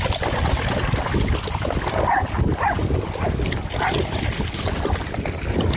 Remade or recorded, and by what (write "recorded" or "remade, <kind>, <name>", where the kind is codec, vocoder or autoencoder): recorded